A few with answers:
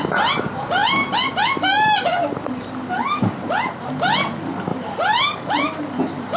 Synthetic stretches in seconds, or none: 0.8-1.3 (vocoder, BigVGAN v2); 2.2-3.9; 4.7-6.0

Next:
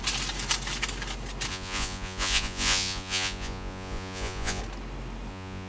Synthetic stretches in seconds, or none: 1.5-4.6 (vocoder, Vocos); 5.3-5.7

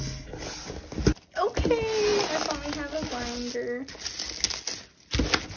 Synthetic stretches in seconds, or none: none

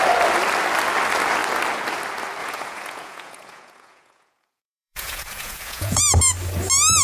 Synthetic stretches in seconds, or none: 2.4-6.0 (vocoder, Vocos)